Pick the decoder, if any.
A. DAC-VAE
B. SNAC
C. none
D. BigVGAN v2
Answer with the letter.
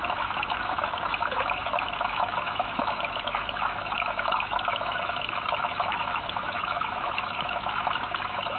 A